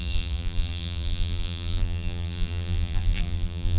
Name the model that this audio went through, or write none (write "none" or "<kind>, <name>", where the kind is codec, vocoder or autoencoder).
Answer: vocoder, BigVGAN v2